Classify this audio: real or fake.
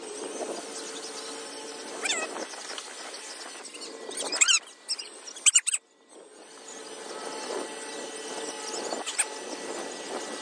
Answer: real